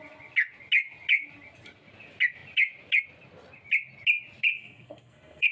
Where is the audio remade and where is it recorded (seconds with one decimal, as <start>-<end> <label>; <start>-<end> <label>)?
0.0-4.5 recorded; 4.5-5.5 remade